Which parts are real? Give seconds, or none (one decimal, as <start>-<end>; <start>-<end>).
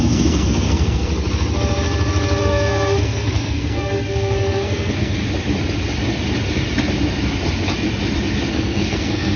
1.1-2.4; 5.2-8.5